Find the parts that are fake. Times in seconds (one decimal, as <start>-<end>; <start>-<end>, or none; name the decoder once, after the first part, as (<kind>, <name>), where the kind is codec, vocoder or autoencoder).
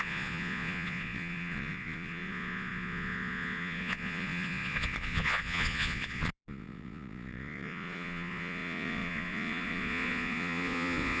0.0-11.2 (vocoder, Vocos)